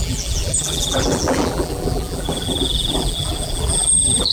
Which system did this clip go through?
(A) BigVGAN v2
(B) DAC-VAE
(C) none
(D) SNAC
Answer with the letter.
A